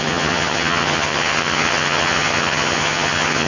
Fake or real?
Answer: fake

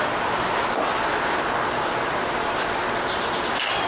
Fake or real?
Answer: real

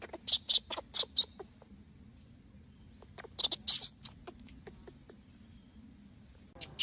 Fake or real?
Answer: real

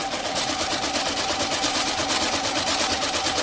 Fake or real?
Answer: real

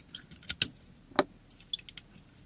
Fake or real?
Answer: real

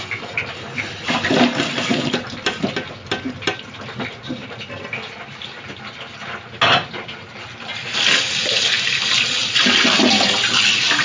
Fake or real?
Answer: real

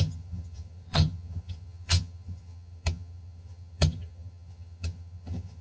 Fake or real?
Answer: fake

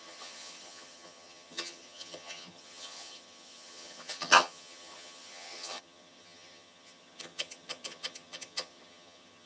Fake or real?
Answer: fake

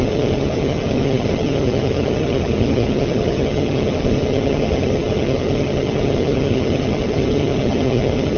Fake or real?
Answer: fake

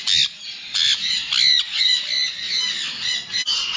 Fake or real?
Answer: real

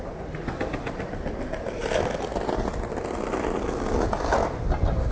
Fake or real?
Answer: real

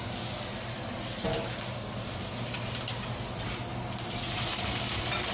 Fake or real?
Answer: real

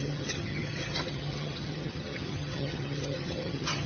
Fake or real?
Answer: fake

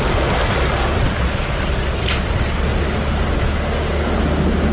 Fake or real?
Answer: real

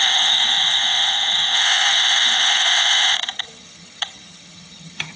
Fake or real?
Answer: fake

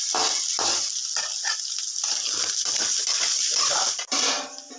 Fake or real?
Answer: real